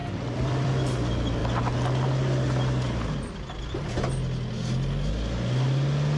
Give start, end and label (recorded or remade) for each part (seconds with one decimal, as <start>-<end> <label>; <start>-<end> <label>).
0.0-0.7 remade; 0.7-6.2 recorded

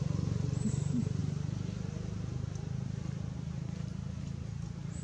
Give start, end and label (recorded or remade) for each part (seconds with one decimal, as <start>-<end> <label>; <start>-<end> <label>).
0.0-5.0 recorded

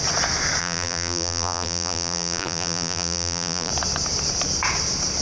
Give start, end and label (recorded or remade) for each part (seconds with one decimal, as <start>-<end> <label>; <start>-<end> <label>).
0.0-0.6 recorded; 0.6-3.7 remade; 3.7-5.2 recorded

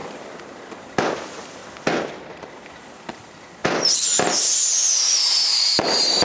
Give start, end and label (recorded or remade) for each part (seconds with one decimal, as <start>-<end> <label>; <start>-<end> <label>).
0.0-1.6 remade; 1.6-3.1 recorded; 3.1-6.2 remade

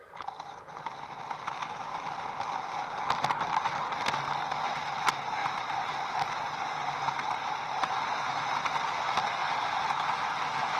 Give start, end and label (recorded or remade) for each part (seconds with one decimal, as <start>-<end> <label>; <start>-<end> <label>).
0.0-5.4 recorded; 5.4-6.1 remade; 6.1-9.4 recorded; 9.4-9.9 remade; 9.9-10.8 recorded

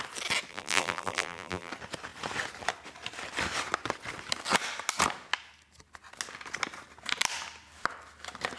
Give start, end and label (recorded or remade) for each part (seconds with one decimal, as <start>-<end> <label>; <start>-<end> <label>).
0.0-0.5 recorded; 0.5-1.7 remade; 1.7-8.6 recorded